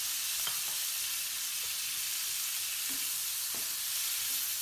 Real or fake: real